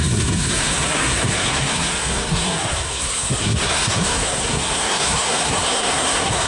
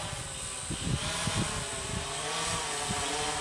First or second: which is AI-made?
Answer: first